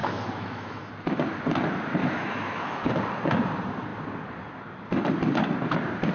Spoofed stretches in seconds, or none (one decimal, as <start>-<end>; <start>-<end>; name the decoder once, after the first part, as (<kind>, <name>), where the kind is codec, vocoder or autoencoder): 0.0-0.9 (autoencoder, DAC-VAE); 2.0-2.9

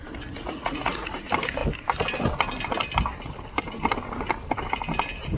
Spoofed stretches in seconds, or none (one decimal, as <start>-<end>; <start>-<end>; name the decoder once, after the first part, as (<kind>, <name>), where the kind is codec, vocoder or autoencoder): 0.4-1.2 (vocoder, Vocos)

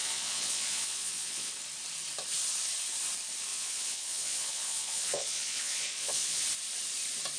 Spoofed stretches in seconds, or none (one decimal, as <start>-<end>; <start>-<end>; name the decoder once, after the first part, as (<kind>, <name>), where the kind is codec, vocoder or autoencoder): 0.0-1.5 (vocoder, Vocos); 3.5-6.4

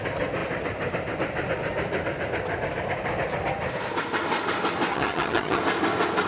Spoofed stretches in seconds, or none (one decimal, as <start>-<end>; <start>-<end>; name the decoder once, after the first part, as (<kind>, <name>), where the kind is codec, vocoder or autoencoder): 4.9-5.6 (vocoder, HiFi-GAN)